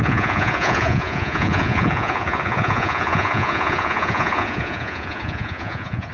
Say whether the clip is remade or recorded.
remade